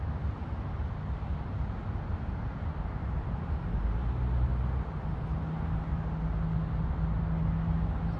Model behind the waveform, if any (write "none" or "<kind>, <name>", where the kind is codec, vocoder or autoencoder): none